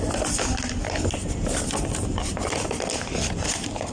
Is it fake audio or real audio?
real